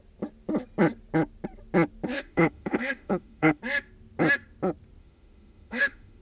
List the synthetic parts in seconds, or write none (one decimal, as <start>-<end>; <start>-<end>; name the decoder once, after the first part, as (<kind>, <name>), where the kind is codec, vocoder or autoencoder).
2.1-3.6 (autoencoder, DAC-VAE); 5.0-6.2